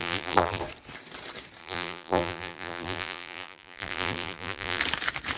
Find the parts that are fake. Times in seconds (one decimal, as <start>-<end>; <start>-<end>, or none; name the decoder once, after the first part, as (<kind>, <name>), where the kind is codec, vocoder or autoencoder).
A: 0.0-0.6 (vocoder, BigVGAN v2); 1.6-4.8